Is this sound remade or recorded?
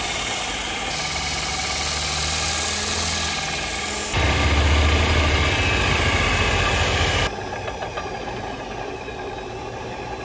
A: recorded